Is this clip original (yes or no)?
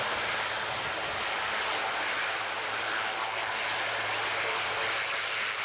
yes